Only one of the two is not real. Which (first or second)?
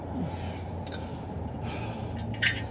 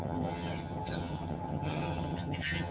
second